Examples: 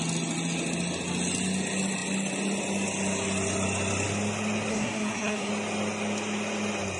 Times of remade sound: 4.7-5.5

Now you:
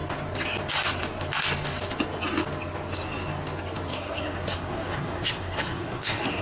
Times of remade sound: 3.9-6.4

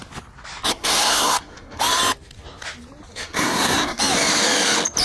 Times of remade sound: 0.7-1.8; 3.1-4.0

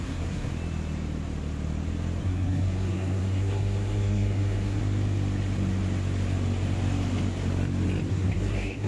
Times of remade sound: 0.0-0.5; 2.2-4.8; 8.1-8.9